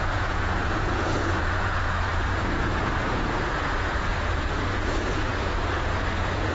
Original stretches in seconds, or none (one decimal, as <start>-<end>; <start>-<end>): none